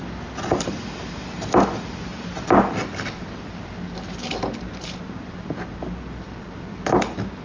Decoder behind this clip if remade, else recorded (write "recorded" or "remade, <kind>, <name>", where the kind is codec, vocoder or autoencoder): recorded